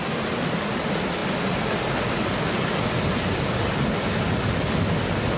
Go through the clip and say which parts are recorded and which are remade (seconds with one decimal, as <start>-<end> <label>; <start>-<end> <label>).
0.0-5.4 recorded